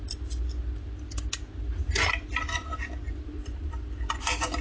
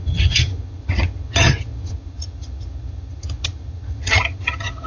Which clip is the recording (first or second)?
first